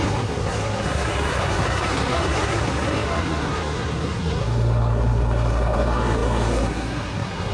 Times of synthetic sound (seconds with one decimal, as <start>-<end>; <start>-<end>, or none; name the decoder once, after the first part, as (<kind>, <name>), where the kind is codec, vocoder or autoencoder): 0.0-7.5 (codec, SNAC)